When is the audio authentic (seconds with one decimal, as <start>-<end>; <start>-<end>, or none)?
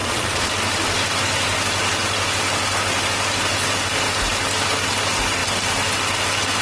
0.5-6.6